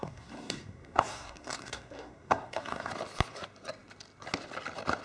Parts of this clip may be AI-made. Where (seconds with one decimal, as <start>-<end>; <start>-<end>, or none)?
0.0-2.9